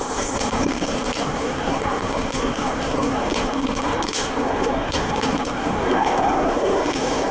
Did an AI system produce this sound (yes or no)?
yes